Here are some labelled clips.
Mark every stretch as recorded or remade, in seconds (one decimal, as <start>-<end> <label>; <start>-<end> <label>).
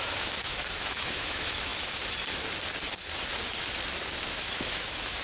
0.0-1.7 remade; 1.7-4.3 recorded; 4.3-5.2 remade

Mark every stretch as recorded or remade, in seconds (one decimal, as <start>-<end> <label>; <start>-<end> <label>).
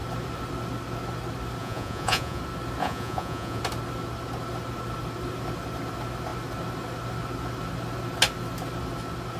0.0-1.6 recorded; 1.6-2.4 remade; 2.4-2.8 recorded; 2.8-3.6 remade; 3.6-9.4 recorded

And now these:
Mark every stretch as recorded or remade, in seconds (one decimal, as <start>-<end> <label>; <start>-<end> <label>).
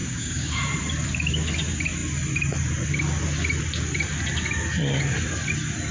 0.0-0.6 remade; 0.6-5.9 recorded